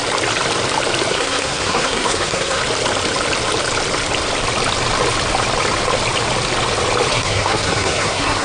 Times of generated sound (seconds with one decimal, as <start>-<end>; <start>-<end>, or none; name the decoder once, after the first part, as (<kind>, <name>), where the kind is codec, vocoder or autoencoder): 1.1-2.6 (codec, SNAC); 7.1-8.4